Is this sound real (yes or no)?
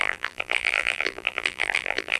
no